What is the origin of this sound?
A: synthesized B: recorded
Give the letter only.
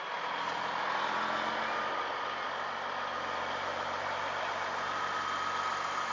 B